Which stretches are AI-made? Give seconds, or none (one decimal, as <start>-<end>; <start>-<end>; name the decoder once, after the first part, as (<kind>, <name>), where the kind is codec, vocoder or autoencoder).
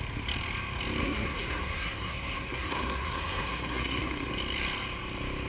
1.0-4.3 (codec, SNAC)